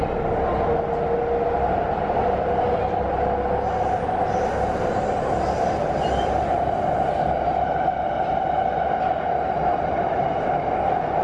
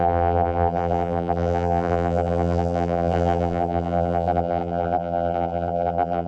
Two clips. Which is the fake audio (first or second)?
second